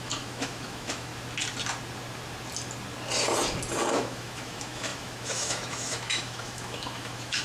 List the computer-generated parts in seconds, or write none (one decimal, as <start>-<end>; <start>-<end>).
0.0-1.1; 3.9-7.4